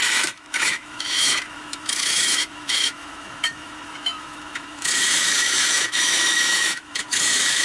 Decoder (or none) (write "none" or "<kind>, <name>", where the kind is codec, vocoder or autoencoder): autoencoder, DAC-VAE